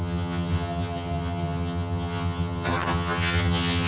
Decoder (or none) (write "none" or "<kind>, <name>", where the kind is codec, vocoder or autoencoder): vocoder, HiFi-GAN